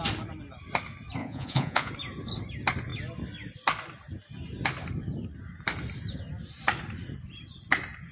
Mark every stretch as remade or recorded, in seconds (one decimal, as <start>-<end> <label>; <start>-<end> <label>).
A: 0.0-1.2 recorded; 1.2-1.9 remade; 1.9-8.1 recorded